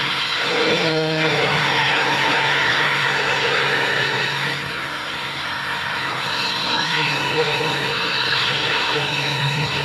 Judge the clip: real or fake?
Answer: fake